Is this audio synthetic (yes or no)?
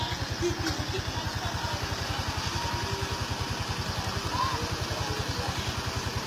no